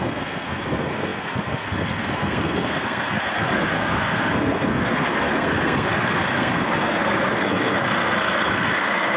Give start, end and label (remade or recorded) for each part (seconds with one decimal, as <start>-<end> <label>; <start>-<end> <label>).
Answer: 0.0-9.2 remade